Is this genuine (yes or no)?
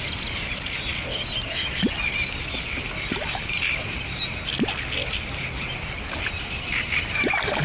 no